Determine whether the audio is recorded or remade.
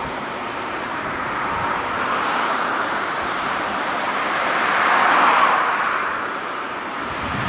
remade